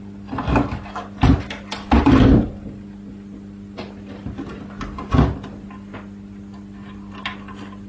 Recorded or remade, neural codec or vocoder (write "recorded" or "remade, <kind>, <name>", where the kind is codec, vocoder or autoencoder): recorded